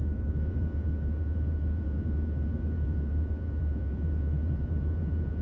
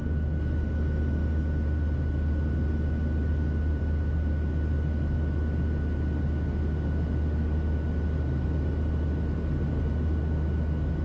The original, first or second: second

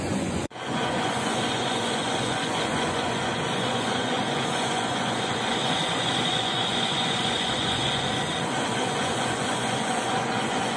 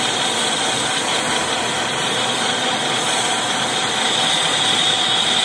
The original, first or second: second